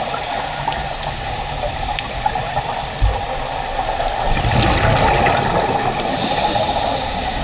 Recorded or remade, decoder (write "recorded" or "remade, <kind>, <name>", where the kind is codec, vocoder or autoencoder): recorded